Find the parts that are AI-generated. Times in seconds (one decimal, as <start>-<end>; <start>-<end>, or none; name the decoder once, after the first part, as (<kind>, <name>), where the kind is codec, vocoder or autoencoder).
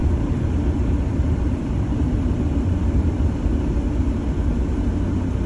1.0-3.5 (vocoder, BigVGAN v2)